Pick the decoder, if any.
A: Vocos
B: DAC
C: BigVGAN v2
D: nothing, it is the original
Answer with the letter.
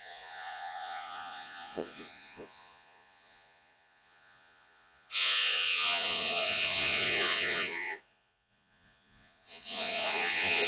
A